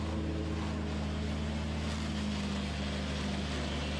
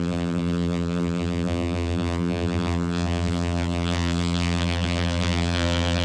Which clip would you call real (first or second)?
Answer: first